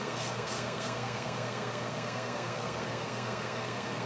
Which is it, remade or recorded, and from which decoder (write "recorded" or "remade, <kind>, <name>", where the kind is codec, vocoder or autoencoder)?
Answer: remade, codec, SNAC